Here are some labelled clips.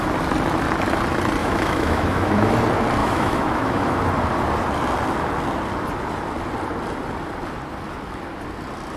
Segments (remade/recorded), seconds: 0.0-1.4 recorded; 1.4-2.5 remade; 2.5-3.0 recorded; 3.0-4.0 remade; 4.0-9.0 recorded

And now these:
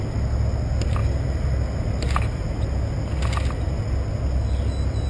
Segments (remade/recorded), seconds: 0.0-5.1 recorded

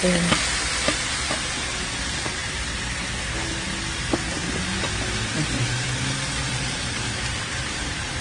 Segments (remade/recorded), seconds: 0.0-6.4 recorded; 6.4-8.2 remade

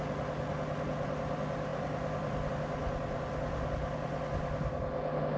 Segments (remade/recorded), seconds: 0.0-1.7 recorded; 1.7-2.5 remade; 2.5-5.4 recorded

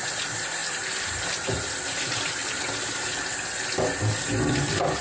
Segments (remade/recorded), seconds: 0.0-5.0 recorded

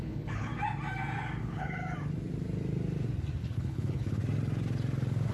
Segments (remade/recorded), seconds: 0.0-0.5 remade; 0.5-1.4 recorded; 1.4-1.8 remade; 1.8-3.4 recorded; 3.4-4.2 remade; 4.2-5.3 recorded

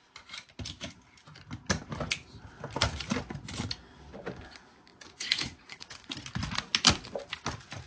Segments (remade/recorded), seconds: 0.0-4.9 recorded; 4.9-6.1 remade; 6.1-7.9 recorded